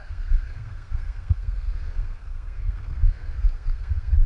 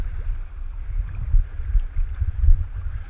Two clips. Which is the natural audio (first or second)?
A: second